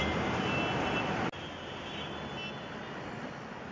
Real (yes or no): yes